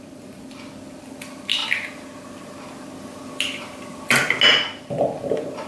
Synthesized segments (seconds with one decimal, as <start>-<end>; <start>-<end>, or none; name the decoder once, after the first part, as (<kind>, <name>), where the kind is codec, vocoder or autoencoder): none